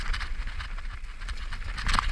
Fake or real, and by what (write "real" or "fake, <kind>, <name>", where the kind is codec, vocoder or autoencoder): real